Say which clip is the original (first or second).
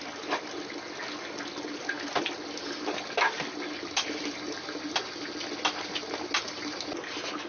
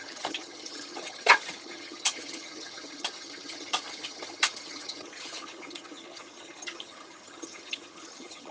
first